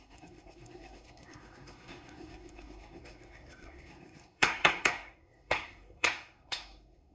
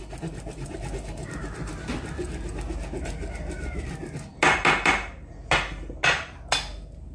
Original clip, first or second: second